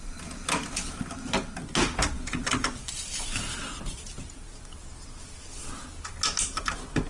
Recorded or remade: recorded